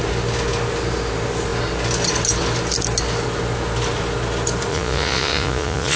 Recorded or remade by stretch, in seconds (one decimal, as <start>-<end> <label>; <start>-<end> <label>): 0.0-4.7 recorded; 4.7-6.0 remade